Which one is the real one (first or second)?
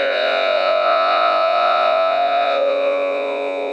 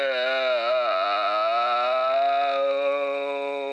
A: second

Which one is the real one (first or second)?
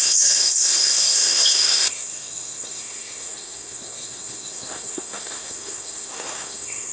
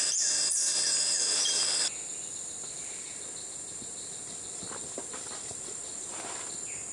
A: second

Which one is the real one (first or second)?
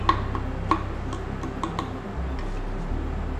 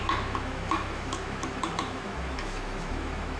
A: first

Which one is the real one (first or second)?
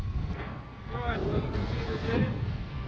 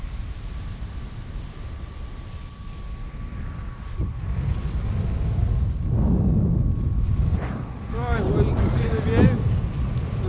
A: second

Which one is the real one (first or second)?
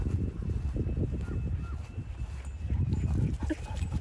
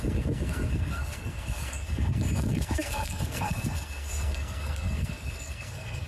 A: first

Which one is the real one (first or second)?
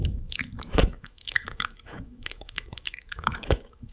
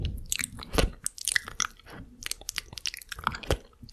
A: second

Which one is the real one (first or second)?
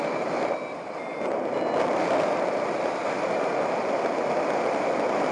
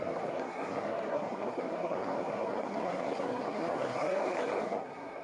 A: first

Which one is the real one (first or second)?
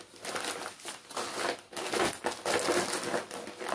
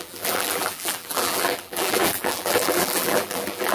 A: first